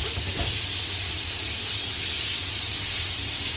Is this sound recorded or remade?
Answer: recorded